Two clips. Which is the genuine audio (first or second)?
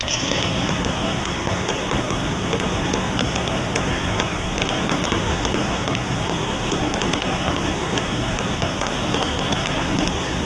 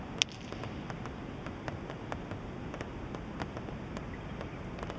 second